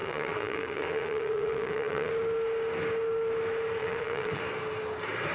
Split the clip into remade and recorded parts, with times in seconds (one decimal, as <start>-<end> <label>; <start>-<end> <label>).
0.0-2.1 remade; 2.1-3.8 recorded; 3.8-4.4 remade; 4.4-5.3 recorded